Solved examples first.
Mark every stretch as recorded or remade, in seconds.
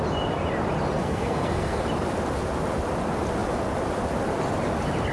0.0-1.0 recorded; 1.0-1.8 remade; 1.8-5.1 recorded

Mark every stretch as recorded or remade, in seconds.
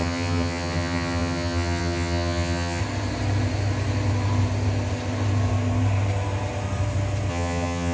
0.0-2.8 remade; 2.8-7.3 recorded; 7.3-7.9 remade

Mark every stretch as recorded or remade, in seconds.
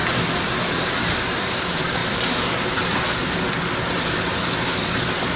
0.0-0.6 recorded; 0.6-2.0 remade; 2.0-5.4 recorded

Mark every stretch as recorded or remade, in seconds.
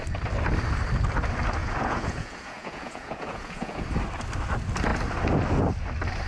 0.0-1.6 recorded; 1.6-3.8 remade; 3.8-6.3 recorded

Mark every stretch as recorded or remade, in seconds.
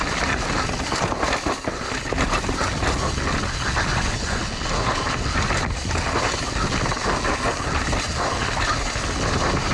0.0-3.9 recorded; 3.9-4.4 remade; 4.4-9.7 recorded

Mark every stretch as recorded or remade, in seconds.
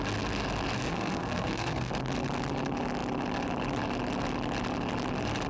0.0-0.8 recorded; 0.8-1.9 remade; 1.9-5.5 recorded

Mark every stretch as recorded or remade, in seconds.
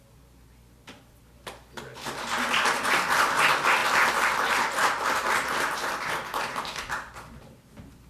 0.0-8.1 recorded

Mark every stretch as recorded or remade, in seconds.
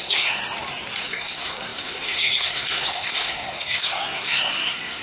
0.0-0.4 remade; 0.4-1.0 recorded; 1.0-5.0 remade